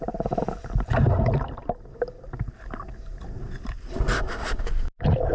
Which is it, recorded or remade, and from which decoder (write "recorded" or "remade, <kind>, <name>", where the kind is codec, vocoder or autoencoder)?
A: recorded